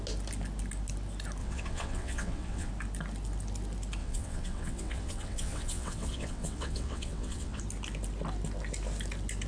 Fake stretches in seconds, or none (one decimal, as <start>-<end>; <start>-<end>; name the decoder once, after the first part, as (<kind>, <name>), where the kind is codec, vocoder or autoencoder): 1.4-2.7 (vocoder, WaveNeXt); 4.0-7.6